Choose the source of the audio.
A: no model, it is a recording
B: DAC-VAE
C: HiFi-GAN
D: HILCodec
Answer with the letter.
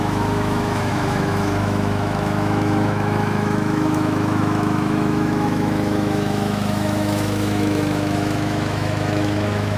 B